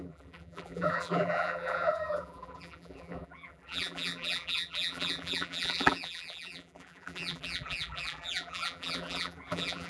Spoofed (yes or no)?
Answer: yes